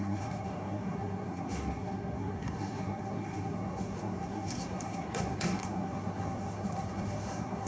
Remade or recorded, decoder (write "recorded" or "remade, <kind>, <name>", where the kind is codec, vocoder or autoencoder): remade, codec, SNAC